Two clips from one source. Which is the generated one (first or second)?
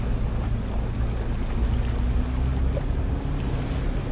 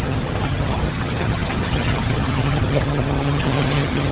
second